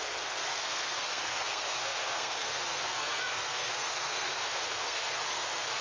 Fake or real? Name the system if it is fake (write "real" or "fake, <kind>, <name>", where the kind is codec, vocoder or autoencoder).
fake, codec, SNAC